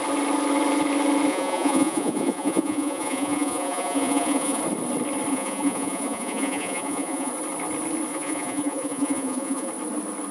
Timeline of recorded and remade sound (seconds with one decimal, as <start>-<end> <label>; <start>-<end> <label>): 0.0-1.3 recorded; 1.3-4.6 remade; 4.6-5.3 recorded; 5.3-7.3 remade; 7.3-8.1 recorded; 8.1-9.7 remade; 9.7-10.3 recorded